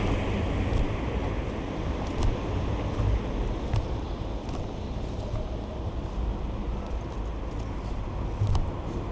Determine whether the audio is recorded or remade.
recorded